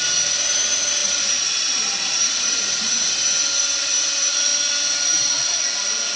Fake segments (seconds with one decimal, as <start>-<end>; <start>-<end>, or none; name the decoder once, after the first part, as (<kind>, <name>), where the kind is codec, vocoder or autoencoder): 1.0-2.6 (vocoder, BigVGAN v2)